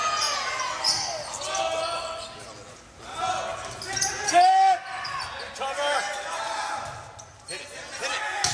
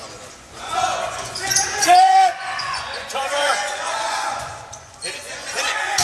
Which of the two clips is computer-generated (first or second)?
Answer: second